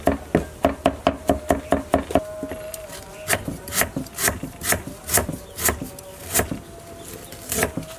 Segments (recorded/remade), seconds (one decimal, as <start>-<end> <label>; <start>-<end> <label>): 0.0-8.0 recorded